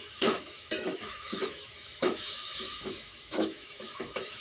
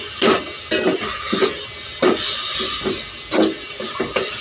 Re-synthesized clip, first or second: first